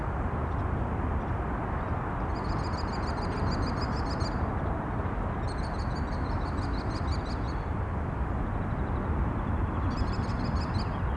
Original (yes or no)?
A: yes